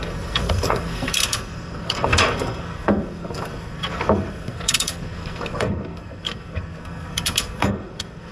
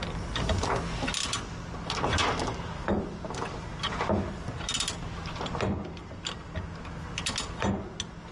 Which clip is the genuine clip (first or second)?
second